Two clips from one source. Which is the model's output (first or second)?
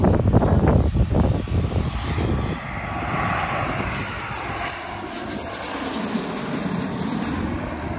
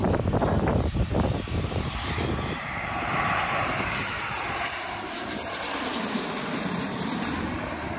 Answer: second